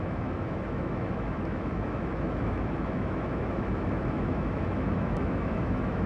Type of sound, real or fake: fake